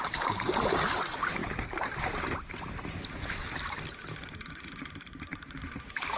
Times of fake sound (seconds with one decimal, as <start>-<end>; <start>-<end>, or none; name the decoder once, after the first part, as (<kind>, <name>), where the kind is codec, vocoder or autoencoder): 0.0-6.2 (vocoder, BigVGAN v2)